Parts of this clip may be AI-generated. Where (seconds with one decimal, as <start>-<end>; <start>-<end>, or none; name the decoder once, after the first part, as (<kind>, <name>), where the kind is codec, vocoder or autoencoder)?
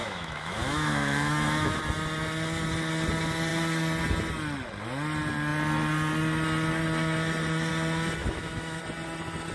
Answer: 0.0-1.8 (autoencoder, DAC-VAE); 8.2-8.8